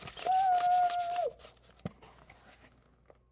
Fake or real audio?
real